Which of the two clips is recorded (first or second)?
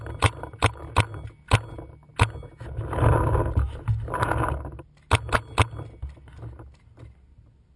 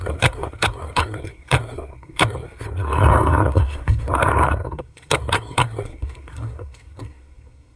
first